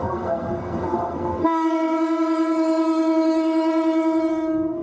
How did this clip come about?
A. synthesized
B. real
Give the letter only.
A